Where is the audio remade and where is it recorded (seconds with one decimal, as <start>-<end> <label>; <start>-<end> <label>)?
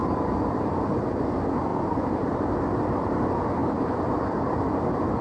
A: 0.0-1.0 remade; 1.0-1.7 recorded; 1.7-2.5 remade; 2.5-3.6 recorded; 3.6-4.5 remade; 4.5-5.2 recorded